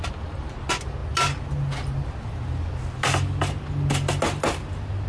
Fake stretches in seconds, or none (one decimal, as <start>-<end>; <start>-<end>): none